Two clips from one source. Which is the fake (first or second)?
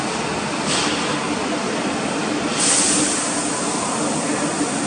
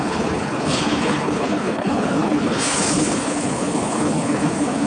second